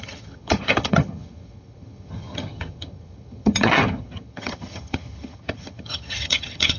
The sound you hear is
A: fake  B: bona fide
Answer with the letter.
A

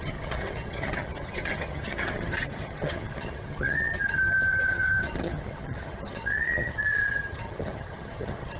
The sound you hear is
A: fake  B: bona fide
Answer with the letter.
A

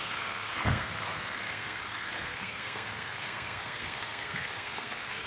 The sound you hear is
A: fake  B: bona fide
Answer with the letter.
A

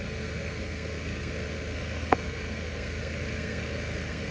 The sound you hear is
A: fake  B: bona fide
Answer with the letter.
A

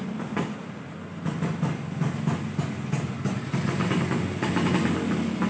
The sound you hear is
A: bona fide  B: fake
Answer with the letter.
A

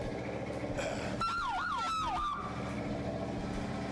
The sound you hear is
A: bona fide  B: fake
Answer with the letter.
A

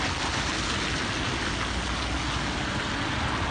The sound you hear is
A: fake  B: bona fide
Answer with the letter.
B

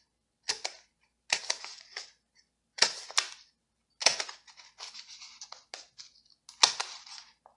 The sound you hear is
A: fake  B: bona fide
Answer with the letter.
B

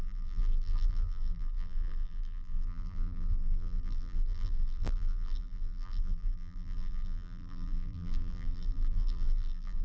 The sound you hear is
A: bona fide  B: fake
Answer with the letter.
B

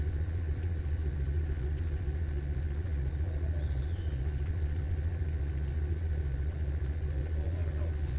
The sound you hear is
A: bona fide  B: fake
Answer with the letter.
B